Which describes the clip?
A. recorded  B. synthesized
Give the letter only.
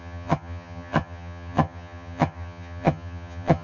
B